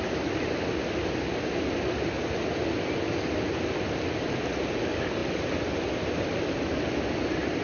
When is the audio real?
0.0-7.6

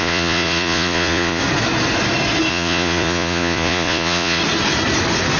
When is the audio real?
1.4-2.5; 4.4-5.4

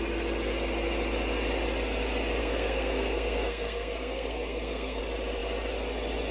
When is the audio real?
0.0-2.4; 5.0-6.3

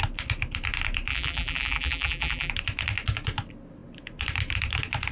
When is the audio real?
0.0-1.1; 2.5-5.1

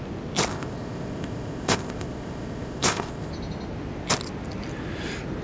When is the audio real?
0.0-0.5; 3.3-5.4

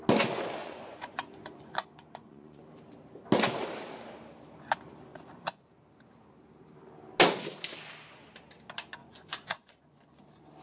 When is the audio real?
0.0-0.6; 2.6-5.1; 5.6-9.0; 10.2-10.6

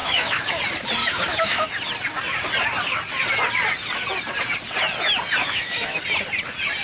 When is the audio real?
0.6-1.0; 1.7-5.4; 6.0-6.8